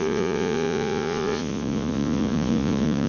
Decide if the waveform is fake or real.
fake